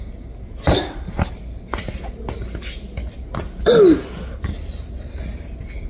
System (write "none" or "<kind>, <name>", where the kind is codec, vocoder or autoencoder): none